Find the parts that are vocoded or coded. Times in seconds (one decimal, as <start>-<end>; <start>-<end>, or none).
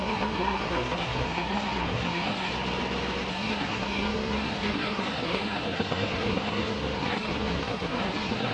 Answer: 0.0-2.5; 3.3-8.5